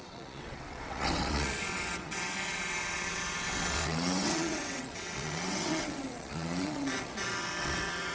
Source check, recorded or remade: remade